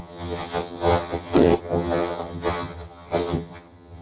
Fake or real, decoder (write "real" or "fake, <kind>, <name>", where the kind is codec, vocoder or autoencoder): fake, vocoder, HiFi-GAN